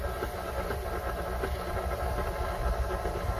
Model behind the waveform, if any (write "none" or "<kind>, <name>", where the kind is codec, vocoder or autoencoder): none